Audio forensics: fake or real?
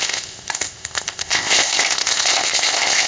fake